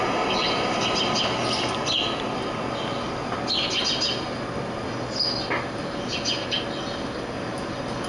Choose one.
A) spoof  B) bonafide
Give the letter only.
B